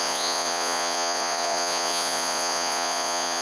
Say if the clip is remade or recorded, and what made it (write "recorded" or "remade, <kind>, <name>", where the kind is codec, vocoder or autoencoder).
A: remade, vocoder, Vocos